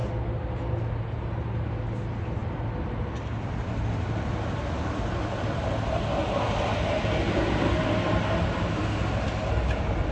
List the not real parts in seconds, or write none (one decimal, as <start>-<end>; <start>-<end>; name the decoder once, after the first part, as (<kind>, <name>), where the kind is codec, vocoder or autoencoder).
none